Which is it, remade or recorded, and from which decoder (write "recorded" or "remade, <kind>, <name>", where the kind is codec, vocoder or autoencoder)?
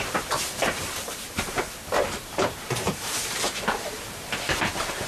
remade, vocoder, BigVGAN v2